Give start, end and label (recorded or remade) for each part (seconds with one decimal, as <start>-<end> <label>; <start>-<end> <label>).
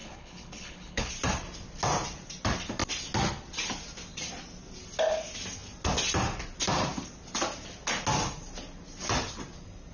0.0-1.1 remade; 1.1-9.9 recorded